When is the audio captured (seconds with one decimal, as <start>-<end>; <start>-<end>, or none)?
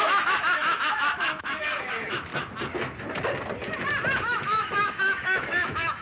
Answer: 2.3-4.2